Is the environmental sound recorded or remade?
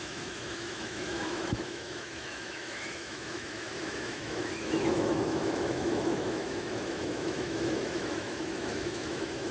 remade